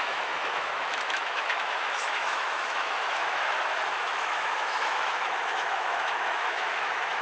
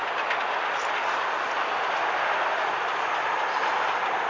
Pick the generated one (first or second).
first